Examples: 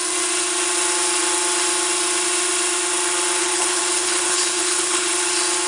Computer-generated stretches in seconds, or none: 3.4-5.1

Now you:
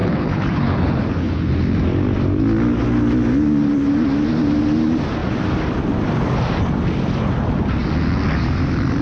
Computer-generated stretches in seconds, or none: 0.0-1.5

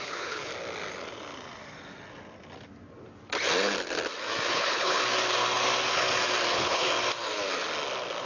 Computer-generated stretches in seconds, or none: 0.0-0.5; 4.5-5.0; 6.5-6.9

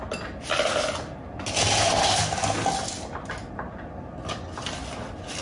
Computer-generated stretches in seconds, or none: none

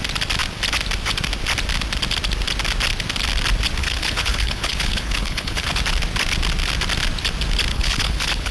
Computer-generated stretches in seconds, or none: 3.8-5.8; 7.7-8.5

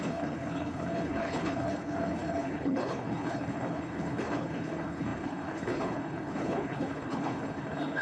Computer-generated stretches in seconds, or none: 0.0-8.0

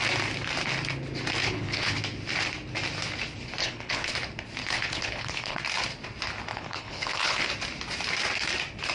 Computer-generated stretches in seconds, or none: 1.4-2.0; 3.6-4.1; 4.6-5.6; 6.5-7.5